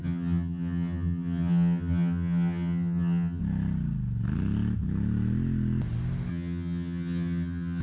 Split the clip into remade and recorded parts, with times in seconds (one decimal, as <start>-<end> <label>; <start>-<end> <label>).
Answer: 0.0-3.4 remade; 3.4-6.3 recorded; 6.3-7.8 remade